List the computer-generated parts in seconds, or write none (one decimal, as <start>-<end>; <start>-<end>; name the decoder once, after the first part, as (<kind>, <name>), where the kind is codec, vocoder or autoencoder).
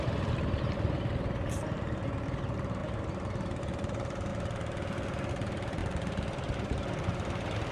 0.0-4.3 (vocoder, BigVGAN v2); 5.3-7.7